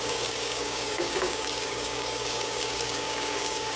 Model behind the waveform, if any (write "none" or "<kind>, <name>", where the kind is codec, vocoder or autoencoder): codec, DAC